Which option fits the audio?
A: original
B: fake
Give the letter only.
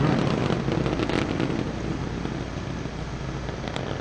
A